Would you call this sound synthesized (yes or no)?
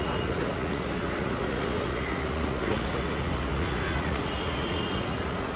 yes